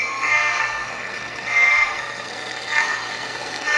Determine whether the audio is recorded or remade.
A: remade